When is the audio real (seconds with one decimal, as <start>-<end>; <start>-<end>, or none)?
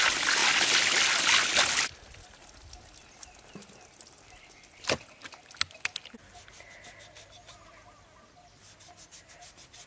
0.0-9.9